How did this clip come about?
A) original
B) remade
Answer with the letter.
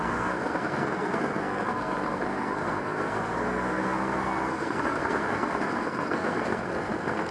B